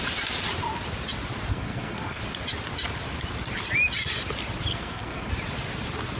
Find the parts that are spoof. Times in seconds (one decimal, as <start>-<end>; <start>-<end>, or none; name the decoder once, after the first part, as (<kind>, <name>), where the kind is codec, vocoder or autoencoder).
1.5-2.2 (codec, SNAC); 4.7-5.3